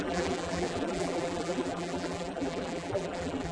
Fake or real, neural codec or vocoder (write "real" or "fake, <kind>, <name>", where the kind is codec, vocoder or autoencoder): fake, vocoder, BigVGAN v2